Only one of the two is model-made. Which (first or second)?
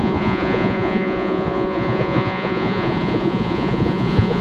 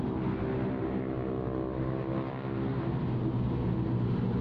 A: first